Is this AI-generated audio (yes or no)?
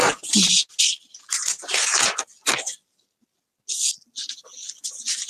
no